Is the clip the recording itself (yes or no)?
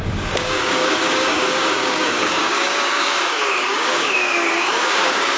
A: no